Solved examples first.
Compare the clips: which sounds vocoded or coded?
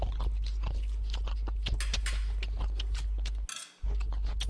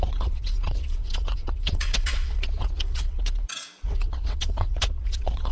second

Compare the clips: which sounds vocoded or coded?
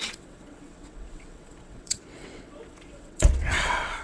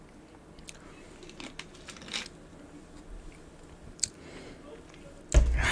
first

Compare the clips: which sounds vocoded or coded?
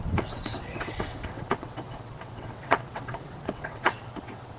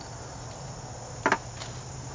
first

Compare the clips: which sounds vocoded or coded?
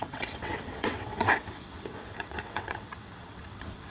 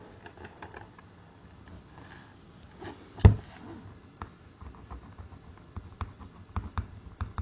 first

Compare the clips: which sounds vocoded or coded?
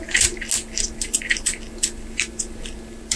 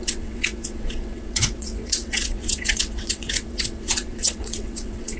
second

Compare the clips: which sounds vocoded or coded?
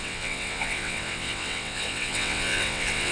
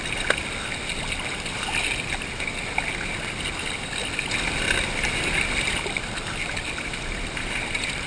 first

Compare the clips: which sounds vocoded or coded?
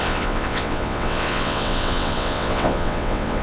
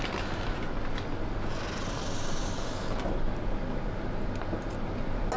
first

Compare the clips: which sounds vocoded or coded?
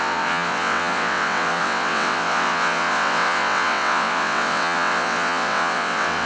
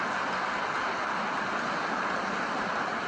first